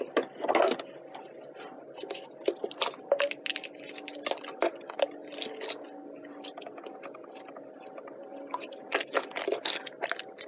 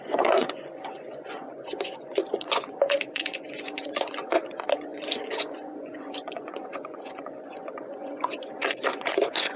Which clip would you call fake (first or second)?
second